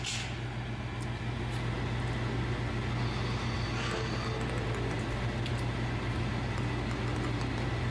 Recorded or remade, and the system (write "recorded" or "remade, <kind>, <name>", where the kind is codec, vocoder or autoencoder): recorded